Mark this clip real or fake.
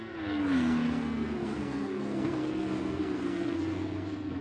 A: fake